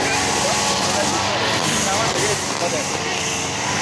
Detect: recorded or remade recorded